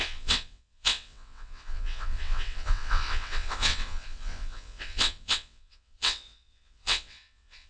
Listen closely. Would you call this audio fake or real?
fake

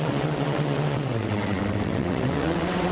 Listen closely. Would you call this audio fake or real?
fake